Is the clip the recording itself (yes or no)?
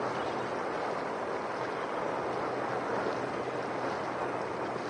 yes